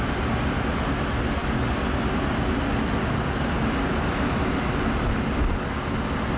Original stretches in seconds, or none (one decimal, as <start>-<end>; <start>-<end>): 0.0-6.4